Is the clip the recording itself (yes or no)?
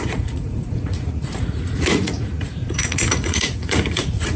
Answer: no